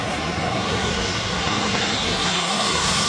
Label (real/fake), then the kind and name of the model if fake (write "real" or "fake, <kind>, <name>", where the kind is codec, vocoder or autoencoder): fake, codec, SNAC